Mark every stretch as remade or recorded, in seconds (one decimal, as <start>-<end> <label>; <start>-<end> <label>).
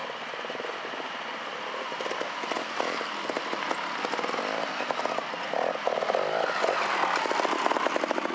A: 0.0-8.3 recorded